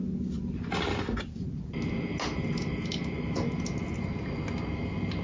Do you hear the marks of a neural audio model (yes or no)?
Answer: no